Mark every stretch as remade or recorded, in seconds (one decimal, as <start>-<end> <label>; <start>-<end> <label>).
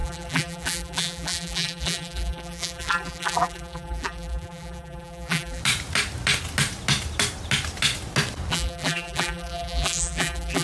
0.0-5.6 remade; 5.6-8.5 recorded; 8.5-10.6 remade